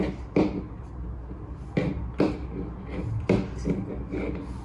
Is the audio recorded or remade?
recorded